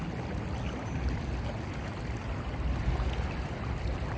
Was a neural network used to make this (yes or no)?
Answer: no